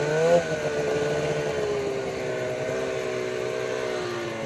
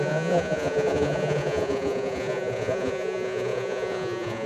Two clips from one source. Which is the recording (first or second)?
first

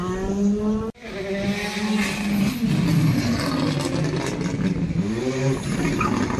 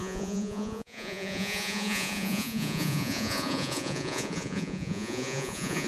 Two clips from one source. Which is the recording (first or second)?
first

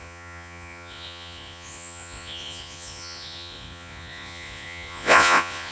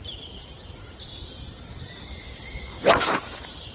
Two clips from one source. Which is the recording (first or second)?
second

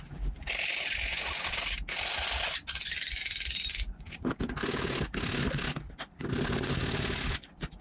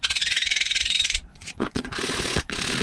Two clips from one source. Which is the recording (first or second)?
first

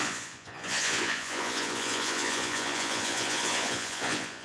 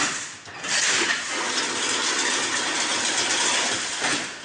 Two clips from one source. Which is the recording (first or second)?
second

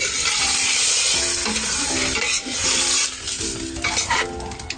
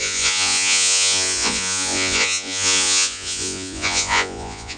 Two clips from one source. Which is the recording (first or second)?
first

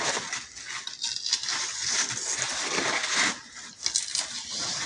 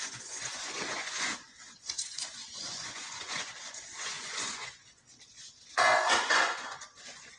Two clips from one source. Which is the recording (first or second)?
first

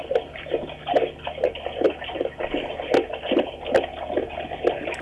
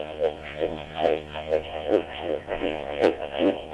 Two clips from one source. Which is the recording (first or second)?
first